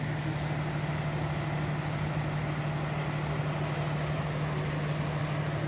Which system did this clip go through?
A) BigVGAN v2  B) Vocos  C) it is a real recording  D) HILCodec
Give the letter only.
C